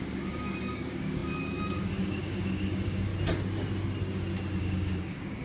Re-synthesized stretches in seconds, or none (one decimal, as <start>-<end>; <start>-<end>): 0.0-3.1; 4.6-5.4